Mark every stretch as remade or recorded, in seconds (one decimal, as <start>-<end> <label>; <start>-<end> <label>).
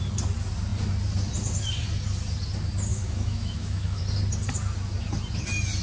0.0-2.9 recorded; 2.9-4.0 remade; 4.0-5.8 recorded